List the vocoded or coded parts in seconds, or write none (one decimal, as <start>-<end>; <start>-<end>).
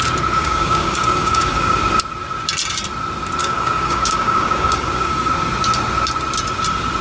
0.4-1.8; 3.4-5.3